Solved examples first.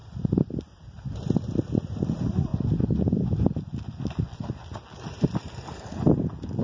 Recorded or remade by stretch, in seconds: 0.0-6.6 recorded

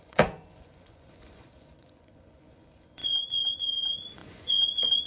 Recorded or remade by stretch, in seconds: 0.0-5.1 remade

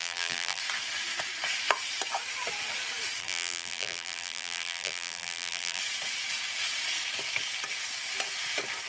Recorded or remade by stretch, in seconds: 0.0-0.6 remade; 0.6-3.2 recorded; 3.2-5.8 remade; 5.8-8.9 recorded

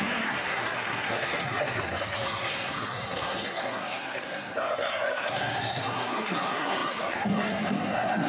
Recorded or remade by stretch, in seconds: 0.0-8.3 remade